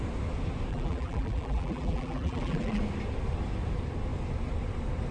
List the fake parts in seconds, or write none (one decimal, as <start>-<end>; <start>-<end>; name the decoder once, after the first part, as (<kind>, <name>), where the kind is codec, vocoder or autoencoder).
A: 0.7-2.8 (vocoder, BigVGAN v2)